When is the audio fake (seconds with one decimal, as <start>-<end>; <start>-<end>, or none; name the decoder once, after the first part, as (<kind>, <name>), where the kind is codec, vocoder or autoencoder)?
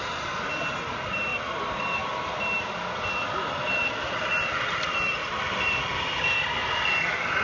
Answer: 1.3-2.1 (vocoder, BigVGAN v2); 5.2-6.3